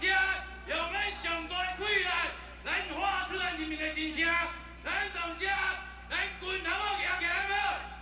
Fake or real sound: real